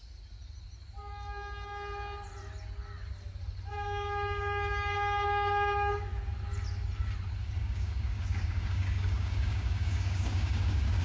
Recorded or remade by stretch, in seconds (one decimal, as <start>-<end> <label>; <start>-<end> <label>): 0.0-3.7 recorded; 3.7-6.1 remade; 6.1-7.4 recorded; 7.4-11.0 remade